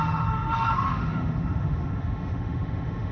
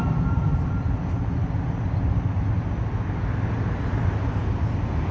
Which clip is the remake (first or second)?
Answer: first